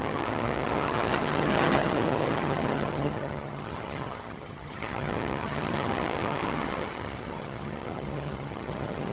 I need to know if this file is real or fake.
fake